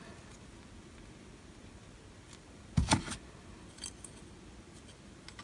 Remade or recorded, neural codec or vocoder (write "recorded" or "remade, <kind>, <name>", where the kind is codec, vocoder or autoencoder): recorded